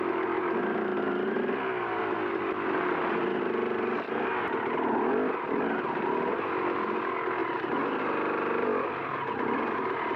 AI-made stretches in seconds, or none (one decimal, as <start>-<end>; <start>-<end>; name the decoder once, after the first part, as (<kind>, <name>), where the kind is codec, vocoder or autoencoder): 7.4-9.2 (vocoder, BigVGAN v2)